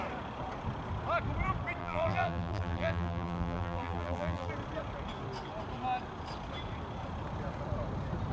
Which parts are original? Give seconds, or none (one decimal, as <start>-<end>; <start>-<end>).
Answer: 0.0-1.8; 4.5-8.3